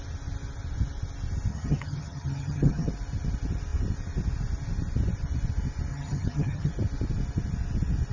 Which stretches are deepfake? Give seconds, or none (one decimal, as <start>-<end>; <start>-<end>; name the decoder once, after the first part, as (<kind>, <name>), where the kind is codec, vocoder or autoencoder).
1.5-2.9 (vocoder, HiFi-GAN); 5.9-6.7